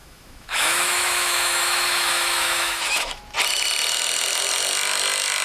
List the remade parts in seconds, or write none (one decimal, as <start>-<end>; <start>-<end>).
0.0-3.2